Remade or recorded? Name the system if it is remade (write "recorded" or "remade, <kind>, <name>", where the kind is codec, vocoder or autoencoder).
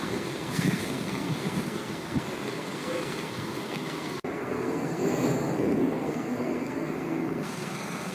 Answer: remade, codec, SNAC